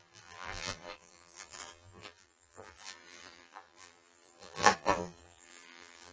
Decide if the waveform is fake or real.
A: fake